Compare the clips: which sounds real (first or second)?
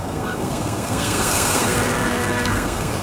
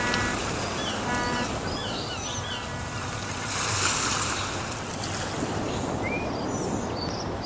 second